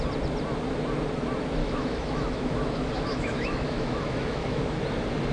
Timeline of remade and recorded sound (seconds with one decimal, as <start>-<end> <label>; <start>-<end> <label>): 0.0-1.6 recorded; 1.6-4.8 remade; 4.8-5.3 recorded